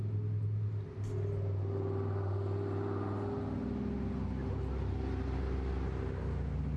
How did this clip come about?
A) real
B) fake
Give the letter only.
A